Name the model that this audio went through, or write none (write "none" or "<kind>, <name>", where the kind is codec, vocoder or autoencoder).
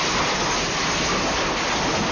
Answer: none